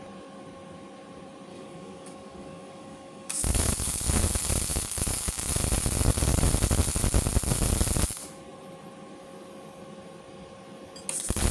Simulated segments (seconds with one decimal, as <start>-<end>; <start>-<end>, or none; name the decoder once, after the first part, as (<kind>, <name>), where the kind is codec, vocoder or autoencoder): 1.5-4.2 (codec, DAC); 4.7-5.5